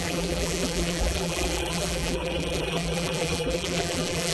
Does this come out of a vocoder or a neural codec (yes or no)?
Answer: yes